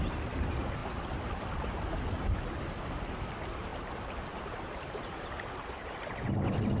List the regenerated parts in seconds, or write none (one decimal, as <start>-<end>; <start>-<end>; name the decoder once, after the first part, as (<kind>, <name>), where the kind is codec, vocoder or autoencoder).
none